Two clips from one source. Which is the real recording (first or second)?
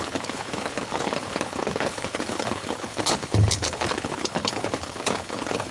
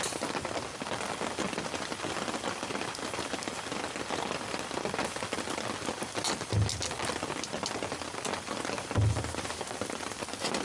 second